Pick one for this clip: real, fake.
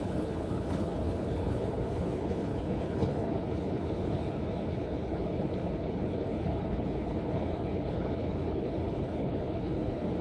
fake